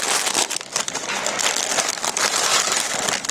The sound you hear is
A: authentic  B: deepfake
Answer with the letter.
A